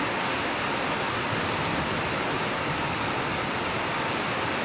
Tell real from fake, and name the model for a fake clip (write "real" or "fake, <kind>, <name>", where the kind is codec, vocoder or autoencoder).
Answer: real